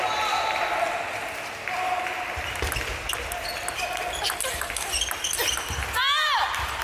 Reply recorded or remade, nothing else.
recorded